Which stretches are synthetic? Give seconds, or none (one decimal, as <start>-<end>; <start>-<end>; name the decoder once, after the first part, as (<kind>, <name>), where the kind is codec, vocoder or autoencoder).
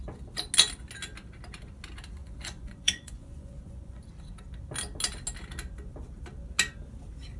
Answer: 2.2-4.0 (vocoder, Vocos)